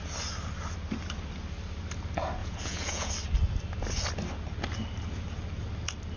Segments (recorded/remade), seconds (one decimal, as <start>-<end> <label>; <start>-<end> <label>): 0.0-2.4 recorded; 2.4-3.1 remade; 3.1-6.2 recorded